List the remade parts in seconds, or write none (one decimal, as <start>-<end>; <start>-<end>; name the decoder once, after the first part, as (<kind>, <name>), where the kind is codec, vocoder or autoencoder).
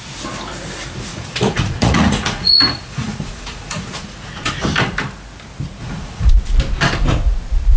1.1-4.5 (vocoder, Vocos); 5.8-6.3